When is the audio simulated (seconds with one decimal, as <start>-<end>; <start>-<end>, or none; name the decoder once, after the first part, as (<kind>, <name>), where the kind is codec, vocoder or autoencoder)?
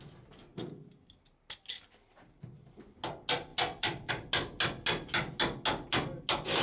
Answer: none